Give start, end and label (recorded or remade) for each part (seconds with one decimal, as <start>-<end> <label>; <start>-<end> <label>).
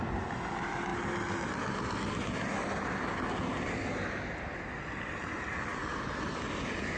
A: 0.0-7.0 recorded